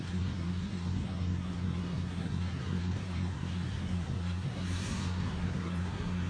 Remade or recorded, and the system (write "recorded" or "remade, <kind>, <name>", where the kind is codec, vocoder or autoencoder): remade, codec, SNAC